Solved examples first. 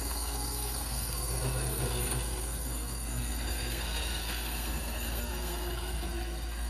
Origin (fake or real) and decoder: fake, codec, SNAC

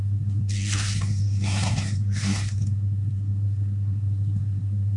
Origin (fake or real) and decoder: fake, codec, SNAC